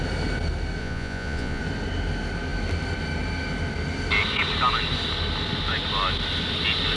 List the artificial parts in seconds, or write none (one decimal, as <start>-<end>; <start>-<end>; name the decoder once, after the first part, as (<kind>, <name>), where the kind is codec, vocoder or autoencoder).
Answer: 0.8-1.6 (vocoder, Vocos)